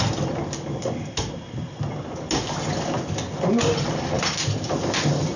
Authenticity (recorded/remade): recorded